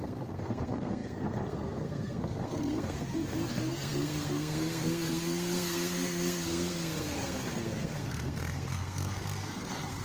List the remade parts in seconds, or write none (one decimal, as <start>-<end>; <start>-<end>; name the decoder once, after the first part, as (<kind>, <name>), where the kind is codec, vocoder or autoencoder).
0.0-10.0 (codec, SNAC)